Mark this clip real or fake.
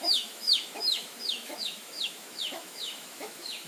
fake